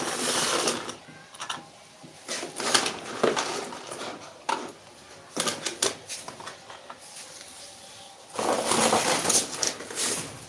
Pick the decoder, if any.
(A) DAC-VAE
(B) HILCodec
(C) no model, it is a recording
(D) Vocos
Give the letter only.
C